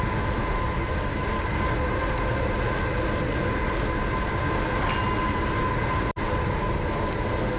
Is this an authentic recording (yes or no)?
yes